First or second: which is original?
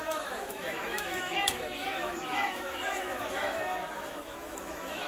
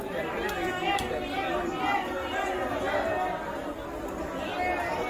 second